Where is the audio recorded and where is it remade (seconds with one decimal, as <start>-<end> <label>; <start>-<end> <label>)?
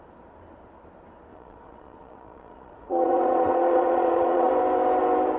0.0-1.3 recorded; 1.3-4.5 remade; 4.5-5.4 recorded